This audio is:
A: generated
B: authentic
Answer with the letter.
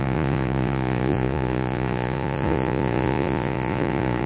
A